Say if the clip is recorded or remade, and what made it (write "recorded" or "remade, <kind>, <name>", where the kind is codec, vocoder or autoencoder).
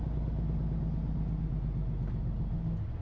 recorded